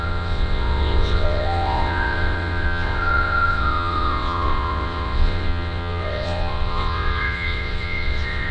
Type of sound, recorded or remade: remade